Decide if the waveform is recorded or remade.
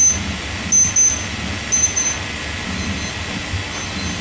recorded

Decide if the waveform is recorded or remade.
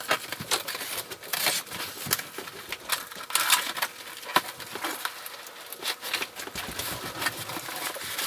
recorded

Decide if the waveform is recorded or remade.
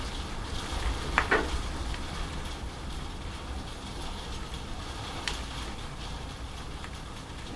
remade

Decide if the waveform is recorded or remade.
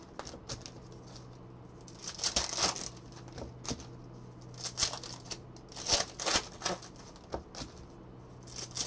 recorded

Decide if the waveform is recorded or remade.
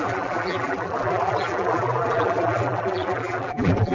remade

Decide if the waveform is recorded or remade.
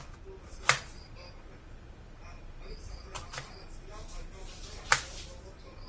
recorded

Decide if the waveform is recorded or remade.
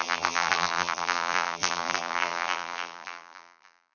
remade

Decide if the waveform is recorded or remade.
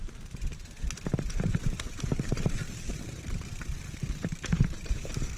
remade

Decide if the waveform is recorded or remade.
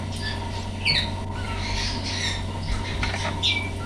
recorded